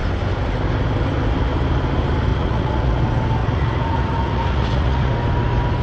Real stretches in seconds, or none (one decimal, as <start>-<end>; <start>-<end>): 0.0-2.3; 3.0-3.4; 5.1-5.8